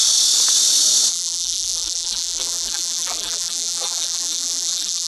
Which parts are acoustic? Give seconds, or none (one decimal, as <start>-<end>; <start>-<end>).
0.0-1.1

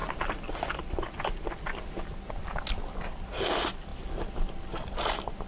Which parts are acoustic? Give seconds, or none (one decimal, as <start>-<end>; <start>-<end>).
0.0-5.5